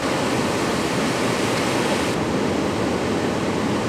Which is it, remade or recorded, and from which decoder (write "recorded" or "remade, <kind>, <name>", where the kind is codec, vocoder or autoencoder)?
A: recorded